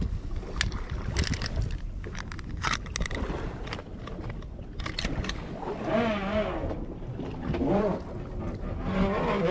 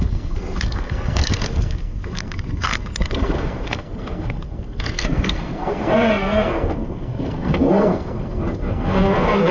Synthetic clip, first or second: second